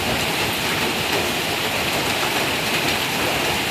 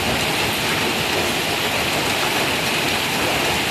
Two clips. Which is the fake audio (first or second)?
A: first